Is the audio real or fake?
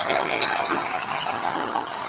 fake